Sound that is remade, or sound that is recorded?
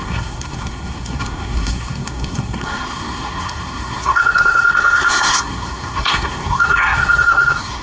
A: remade